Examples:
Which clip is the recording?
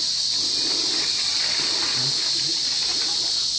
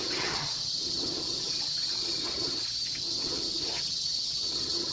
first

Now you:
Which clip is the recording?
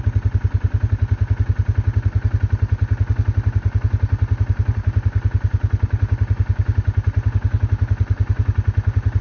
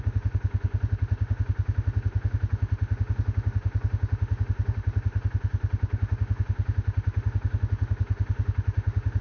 first